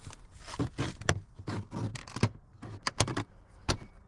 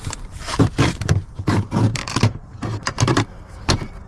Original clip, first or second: first